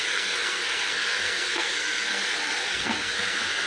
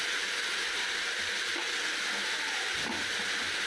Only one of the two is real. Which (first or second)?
second